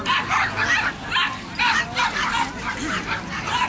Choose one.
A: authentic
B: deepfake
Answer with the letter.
A